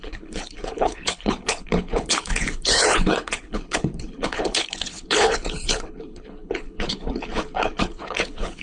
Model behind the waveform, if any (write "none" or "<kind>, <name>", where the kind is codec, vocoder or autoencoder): codec, HILCodec